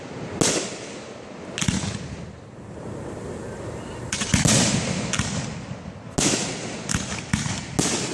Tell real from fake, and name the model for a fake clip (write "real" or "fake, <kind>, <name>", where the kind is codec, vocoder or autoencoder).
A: real